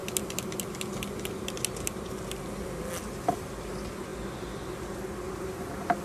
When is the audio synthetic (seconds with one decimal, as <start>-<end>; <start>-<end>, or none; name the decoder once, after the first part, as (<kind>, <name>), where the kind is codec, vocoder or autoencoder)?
none

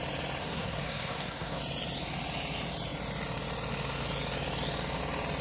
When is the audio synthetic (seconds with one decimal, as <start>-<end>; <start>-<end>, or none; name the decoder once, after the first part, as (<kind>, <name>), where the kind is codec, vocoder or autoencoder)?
0.4-1.6 (codec, SNAC)

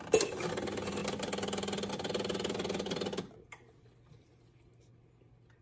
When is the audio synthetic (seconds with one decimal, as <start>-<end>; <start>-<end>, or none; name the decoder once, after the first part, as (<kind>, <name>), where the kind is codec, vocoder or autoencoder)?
none

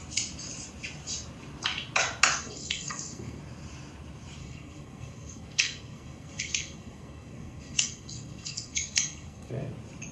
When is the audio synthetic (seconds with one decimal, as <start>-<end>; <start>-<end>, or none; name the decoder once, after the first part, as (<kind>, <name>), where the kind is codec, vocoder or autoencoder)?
2.4-3.4 (codec, SNAC); 4.4-9.5

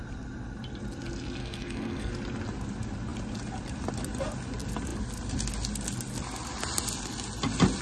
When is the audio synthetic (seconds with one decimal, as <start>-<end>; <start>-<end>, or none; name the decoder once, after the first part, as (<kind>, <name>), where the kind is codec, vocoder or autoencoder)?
1.4-2.1 (codec, SNAC)

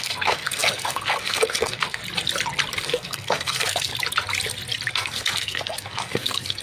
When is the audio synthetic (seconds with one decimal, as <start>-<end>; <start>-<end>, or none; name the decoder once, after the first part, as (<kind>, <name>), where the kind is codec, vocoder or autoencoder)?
0.0-2.0 (codec, SNAC); 2.8-3.9; 4.9-6.6

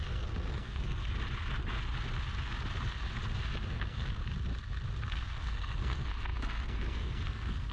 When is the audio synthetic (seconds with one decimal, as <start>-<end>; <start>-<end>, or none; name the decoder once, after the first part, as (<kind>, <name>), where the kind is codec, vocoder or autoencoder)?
0.0-1.0 (codec, SNAC); 3.7-4.2; 5.1-7.7